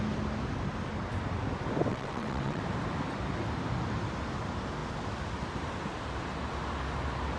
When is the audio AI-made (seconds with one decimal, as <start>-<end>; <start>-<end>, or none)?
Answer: 1.9-2.6